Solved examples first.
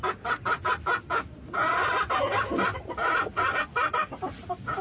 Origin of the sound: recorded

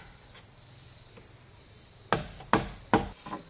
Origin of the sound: recorded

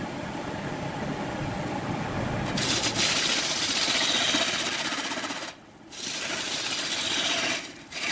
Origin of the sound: recorded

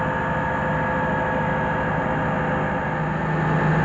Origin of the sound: recorded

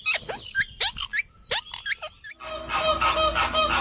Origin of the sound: recorded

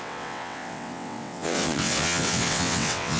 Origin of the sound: remade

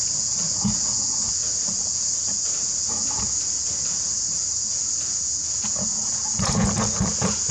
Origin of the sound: remade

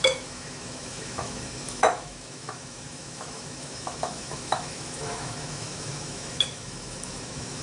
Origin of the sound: remade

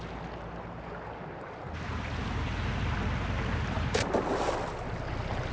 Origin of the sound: recorded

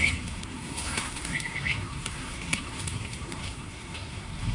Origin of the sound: remade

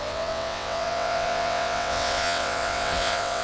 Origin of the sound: remade